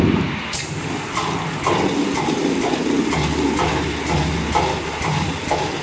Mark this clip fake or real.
real